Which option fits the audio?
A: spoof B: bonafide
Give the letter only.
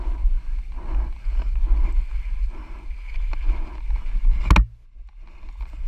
B